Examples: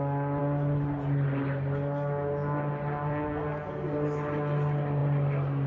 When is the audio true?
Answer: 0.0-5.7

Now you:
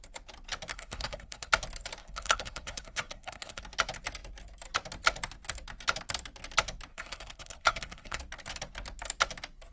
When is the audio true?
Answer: 0.0-0.7; 1.5-2.0; 3.6-6.9; 8.2-9.7